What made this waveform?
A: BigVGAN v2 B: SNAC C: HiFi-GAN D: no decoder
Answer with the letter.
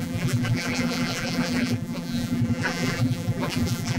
A